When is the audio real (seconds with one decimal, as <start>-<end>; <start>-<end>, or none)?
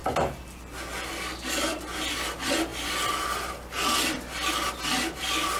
2.1-5.6